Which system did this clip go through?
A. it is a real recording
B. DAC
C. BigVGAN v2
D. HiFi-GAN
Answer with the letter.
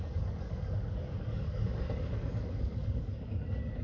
B